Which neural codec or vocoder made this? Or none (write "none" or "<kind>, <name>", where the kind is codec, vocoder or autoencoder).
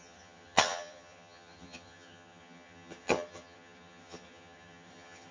vocoder, HiFi-GAN